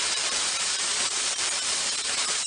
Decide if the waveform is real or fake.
fake